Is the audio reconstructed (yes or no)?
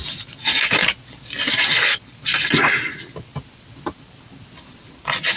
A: no